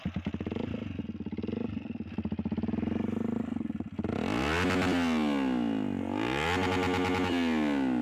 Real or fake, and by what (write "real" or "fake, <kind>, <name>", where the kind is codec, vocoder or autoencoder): real